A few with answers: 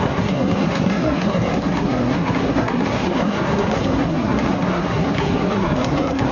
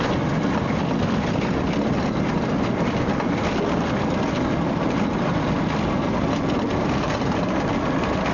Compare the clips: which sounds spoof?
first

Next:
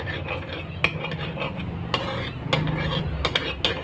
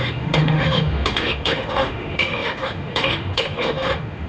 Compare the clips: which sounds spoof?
second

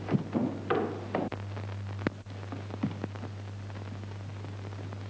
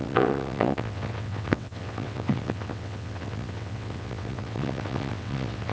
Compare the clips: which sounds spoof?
second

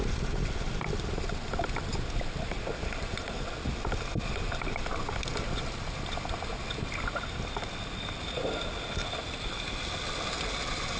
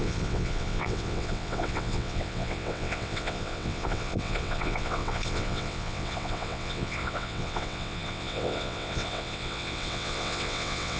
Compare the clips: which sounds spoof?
second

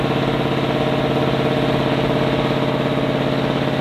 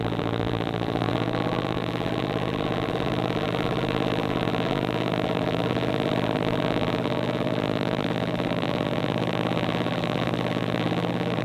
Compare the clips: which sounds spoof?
second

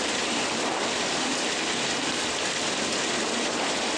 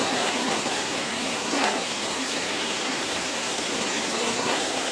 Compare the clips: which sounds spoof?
second